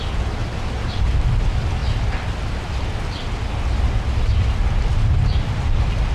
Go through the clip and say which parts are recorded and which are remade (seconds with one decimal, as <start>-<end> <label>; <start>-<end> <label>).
0.0-0.4 recorded; 0.4-0.9 remade; 0.9-6.1 recorded